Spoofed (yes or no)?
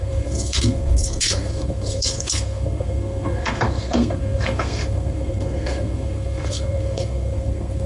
yes